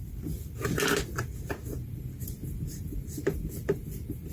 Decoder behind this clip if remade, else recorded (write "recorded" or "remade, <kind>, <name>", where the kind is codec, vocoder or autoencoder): recorded